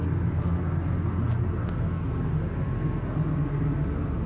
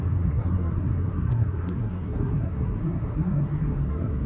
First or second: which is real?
first